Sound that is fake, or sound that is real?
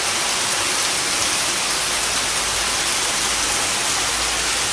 real